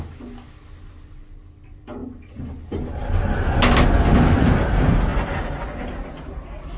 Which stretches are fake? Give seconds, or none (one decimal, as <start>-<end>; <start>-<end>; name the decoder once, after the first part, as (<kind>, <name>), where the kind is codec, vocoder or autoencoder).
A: none